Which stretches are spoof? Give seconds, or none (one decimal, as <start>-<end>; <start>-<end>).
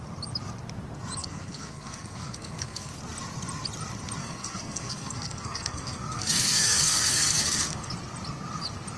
1.2-2.9; 4.2-7.9